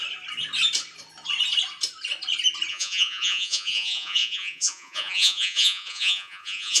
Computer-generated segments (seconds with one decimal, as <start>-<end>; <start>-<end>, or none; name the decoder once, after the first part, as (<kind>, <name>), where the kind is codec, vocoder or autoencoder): 2.7-6.8 (vocoder, Vocos)